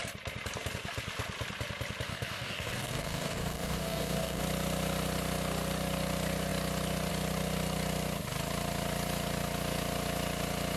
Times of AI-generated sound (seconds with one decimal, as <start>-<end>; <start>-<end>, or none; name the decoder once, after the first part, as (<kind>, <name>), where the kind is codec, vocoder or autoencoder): 2.1-4.4 (codec, DAC)